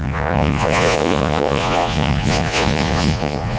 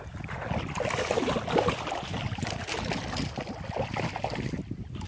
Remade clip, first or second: first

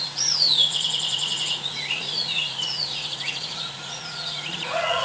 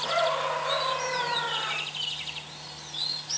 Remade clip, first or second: first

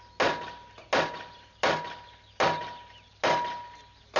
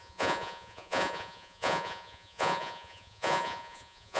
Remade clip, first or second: second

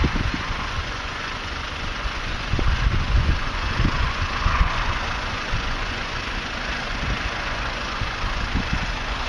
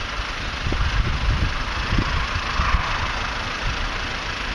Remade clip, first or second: first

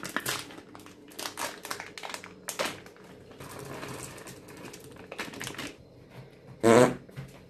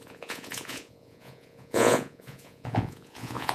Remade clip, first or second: second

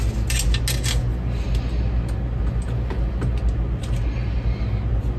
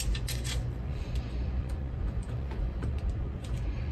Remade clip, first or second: second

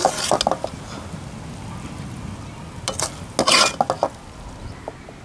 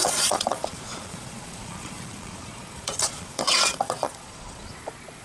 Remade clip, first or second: second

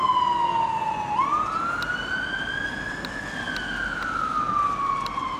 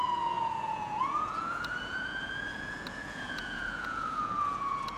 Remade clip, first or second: second